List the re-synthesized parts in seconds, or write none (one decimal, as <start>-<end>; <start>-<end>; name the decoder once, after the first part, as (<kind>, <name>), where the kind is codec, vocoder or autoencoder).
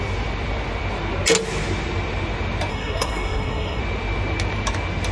2.7-3.8 (codec, SNAC)